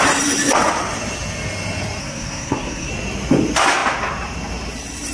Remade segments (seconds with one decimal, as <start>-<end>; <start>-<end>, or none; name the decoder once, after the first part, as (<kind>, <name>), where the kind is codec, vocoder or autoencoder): 2.0-2.9 (codec, SNAC)